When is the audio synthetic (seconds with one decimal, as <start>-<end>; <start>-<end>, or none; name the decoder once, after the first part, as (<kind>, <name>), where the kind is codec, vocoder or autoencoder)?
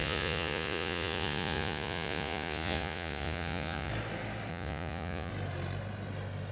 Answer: 0.0-3.9 (vocoder, Vocos); 4.5-5.3